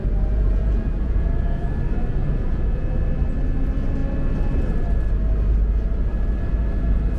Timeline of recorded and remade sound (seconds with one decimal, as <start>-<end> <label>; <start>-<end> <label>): 0.0-1.7 remade; 1.7-2.2 recorded; 2.2-3.0 remade; 3.0-7.2 recorded